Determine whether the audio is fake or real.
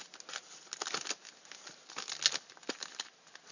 real